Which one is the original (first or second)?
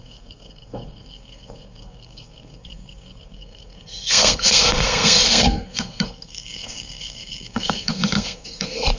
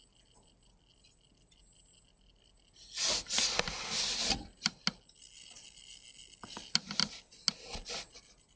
second